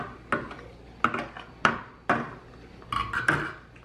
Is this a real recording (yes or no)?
yes